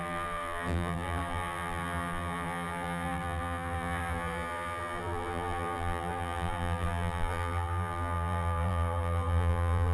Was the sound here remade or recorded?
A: remade